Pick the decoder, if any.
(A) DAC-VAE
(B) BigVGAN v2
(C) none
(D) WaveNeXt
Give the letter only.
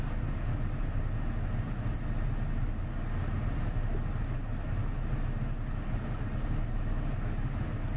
C